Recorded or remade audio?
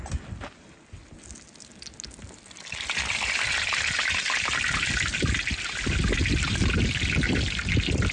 recorded